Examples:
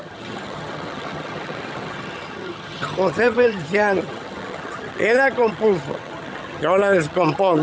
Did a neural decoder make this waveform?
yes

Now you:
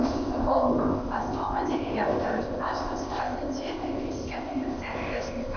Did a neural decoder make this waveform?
yes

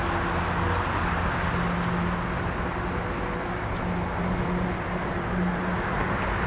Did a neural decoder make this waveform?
no